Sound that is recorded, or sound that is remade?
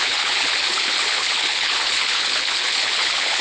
remade